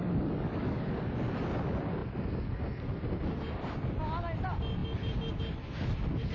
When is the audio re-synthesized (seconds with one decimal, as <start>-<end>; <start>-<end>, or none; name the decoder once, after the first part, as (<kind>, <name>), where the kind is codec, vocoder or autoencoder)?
0.0-0.8 (codec, DAC)